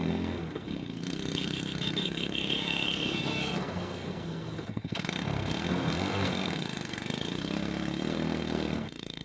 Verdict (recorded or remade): remade